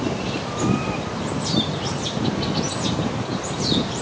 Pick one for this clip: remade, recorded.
recorded